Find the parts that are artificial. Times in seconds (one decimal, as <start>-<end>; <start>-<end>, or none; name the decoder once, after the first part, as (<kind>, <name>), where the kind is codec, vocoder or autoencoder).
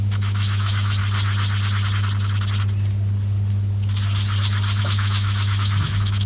0.0-1.0 (autoencoder, DAC-VAE); 4.8-6.3